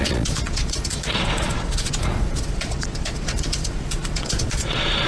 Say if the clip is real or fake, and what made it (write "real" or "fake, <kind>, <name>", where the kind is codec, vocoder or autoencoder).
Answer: fake, vocoder, Vocos